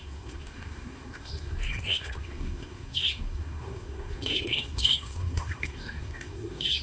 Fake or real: fake